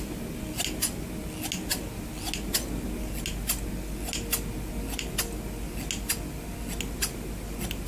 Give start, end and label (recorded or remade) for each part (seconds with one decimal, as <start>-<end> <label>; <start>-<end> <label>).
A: 0.0-7.9 recorded